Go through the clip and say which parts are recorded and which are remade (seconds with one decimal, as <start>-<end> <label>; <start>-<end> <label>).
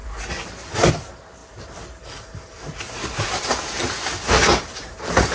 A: 0.0-5.3 recorded